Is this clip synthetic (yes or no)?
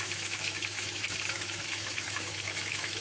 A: yes